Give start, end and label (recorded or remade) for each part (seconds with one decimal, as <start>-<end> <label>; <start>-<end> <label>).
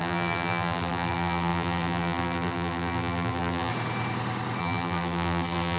0.0-3.7 remade; 3.7-4.6 recorded; 4.6-5.8 remade